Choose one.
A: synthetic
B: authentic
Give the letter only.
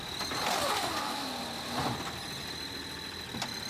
B